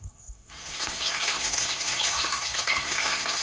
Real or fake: fake